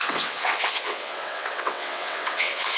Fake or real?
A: fake